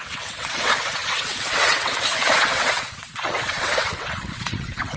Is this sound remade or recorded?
remade